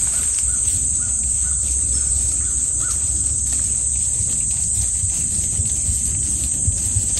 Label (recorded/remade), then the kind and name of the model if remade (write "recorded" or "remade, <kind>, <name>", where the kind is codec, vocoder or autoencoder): recorded